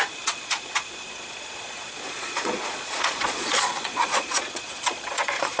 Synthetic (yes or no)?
yes